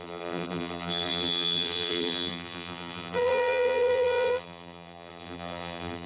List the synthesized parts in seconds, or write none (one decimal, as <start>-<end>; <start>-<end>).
0.0-6.1